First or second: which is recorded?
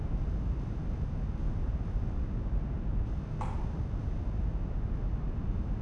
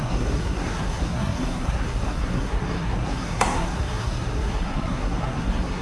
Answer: first